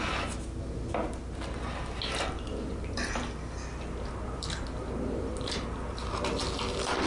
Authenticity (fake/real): real